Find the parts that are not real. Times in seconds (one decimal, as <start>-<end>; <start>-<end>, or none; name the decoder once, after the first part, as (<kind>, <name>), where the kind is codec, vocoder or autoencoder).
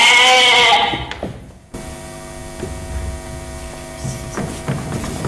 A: none